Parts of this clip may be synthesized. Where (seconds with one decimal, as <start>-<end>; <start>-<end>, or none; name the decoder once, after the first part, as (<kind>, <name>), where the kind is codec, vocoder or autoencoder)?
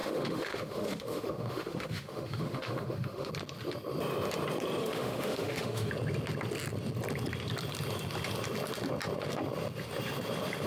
0.0-3.3 (autoencoder, DAC-VAE); 4.8-5.9